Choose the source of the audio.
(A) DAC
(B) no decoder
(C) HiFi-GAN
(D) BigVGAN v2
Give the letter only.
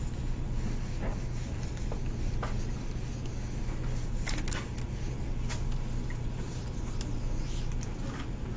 B